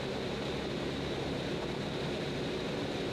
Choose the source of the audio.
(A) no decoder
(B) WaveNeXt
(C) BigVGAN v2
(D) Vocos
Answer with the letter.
A